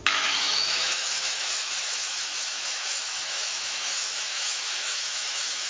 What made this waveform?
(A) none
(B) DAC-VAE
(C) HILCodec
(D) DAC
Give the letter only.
B